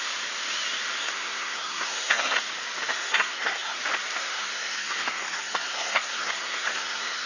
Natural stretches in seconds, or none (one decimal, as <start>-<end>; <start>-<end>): 0.0-1.0; 2.4-2.9; 3.8-4.2